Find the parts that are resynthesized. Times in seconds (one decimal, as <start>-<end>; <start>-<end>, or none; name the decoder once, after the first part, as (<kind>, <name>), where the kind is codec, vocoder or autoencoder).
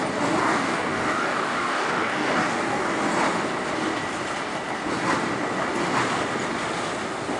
0.4-3.0 (codec, DAC)